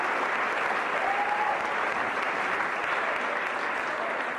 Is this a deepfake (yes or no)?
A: no